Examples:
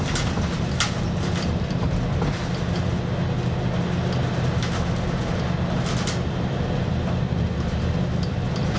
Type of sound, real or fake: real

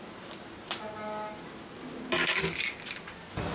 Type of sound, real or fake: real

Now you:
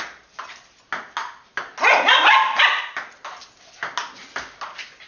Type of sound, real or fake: real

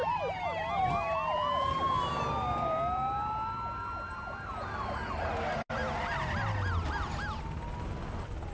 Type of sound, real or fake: real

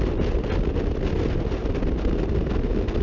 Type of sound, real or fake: real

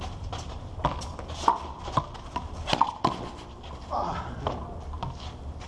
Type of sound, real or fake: real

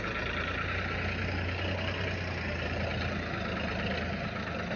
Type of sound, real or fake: real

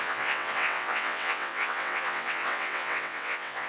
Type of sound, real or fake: fake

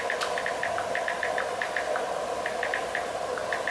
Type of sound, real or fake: real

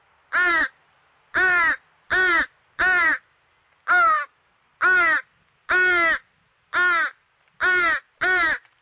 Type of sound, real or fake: real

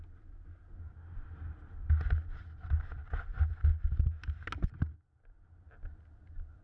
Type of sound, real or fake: real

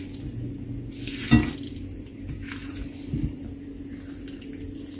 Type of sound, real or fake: real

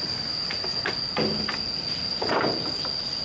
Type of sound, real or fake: real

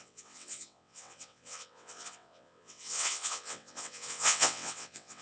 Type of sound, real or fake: fake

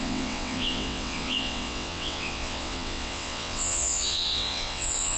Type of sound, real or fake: fake